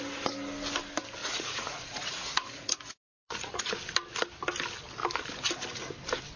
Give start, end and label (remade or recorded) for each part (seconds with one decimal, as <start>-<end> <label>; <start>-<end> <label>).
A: 0.0-1.2 recorded; 1.2-3.6 remade; 3.6-6.4 recorded